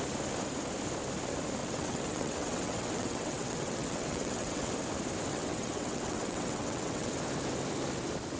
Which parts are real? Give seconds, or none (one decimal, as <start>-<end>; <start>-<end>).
0.0-1.6; 4.7-5.3; 7.1-8.4